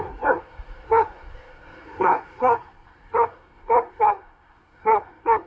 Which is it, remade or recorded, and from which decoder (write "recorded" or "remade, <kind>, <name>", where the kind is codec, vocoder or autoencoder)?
remade, codec, SNAC